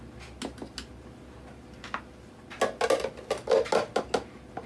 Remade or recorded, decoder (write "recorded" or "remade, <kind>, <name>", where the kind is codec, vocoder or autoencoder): recorded